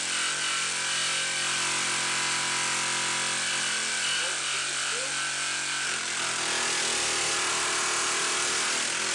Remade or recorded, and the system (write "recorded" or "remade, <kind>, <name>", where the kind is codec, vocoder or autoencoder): recorded